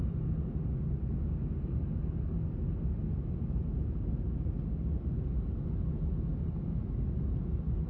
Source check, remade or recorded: recorded